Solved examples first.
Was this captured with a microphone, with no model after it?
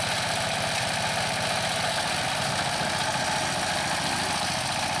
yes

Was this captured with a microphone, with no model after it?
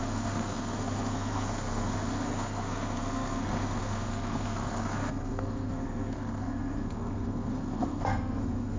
no